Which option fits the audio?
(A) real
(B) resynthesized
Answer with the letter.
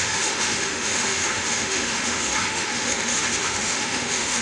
B